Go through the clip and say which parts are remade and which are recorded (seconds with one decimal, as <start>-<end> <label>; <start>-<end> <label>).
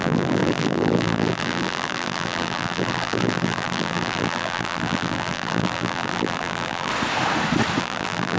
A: 0.0-6.9 remade; 6.9-7.8 recorded; 7.8-8.4 remade